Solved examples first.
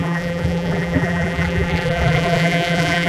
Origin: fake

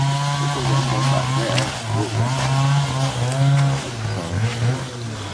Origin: real